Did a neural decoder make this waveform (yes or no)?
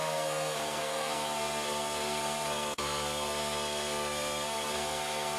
yes